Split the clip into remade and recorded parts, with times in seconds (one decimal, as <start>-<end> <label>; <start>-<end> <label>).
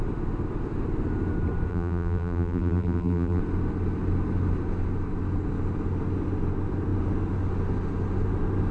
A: 0.0-1.7 recorded; 1.7-3.4 remade; 3.4-8.7 recorded